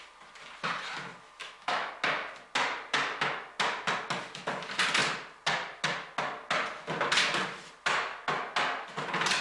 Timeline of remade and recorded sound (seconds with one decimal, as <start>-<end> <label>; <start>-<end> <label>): 0.0-1.4 recorded; 1.4-1.9 remade; 1.9-9.4 recorded